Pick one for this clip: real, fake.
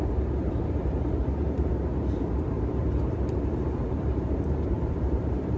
fake